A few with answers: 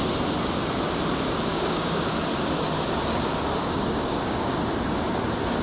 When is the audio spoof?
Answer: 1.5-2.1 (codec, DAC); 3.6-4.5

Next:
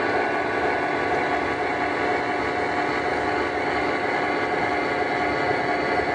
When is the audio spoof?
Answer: 3.1-4.0 (codec, DAC)

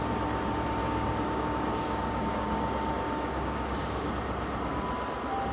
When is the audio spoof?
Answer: 0.8-4.1 (codec, DAC)

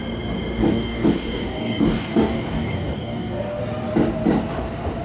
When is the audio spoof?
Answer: 0.6-3.6 (codec, DAC)